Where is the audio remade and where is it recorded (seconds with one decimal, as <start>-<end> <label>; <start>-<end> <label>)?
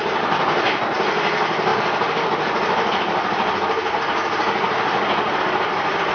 0.0-6.1 recorded